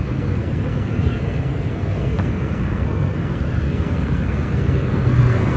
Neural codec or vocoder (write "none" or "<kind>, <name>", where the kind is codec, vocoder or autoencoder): codec, SNAC